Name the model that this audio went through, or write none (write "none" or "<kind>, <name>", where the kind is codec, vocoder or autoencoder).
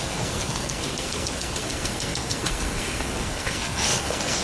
codec, SNAC